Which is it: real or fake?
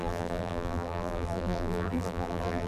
fake